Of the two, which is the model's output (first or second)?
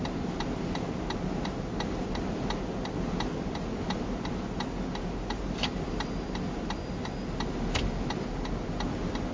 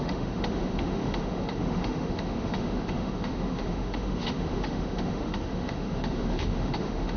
second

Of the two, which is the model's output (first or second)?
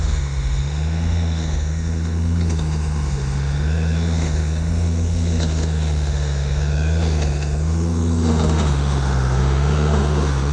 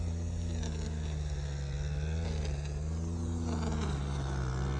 first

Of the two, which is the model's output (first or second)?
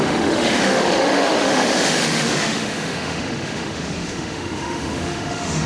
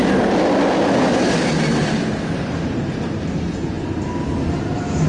first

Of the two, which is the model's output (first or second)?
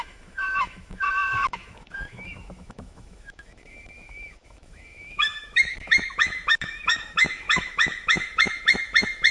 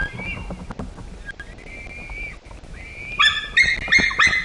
first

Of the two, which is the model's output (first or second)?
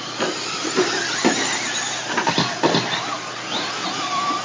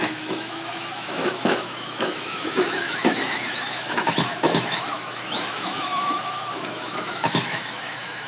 second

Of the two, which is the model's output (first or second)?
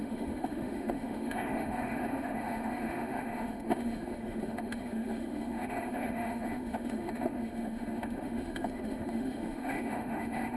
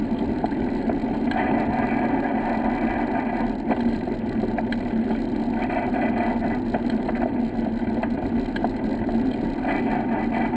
first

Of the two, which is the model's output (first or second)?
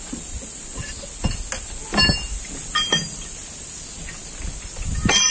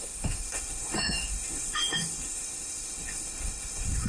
second